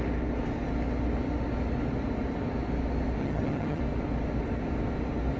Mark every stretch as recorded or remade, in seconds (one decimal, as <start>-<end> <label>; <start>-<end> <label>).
0.0-3.2 recorded; 3.2-3.8 remade; 3.8-5.4 recorded